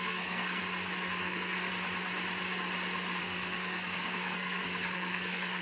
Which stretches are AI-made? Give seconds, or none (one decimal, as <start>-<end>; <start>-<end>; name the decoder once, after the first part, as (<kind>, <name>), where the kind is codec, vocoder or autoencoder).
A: 0.0-0.6 (codec, SNAC); 1.2-1.7; 3.2-5.6